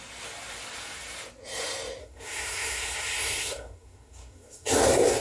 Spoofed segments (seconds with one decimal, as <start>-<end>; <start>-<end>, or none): 2.0-5.2